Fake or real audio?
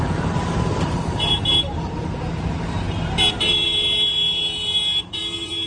fake